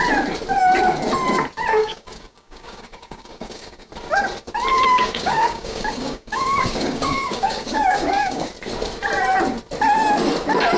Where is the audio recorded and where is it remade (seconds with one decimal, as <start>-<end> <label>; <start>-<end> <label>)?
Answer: 0.0-1.8 recorded; 1.8-3.9 remade; 3.9-4.7 recorded; 4.7-8.5 remade; 8.5-10.8 recorded